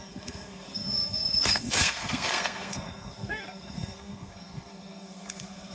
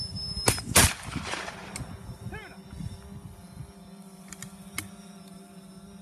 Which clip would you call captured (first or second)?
second